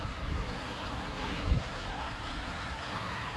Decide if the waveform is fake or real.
fake